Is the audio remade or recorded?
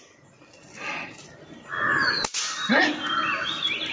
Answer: recorded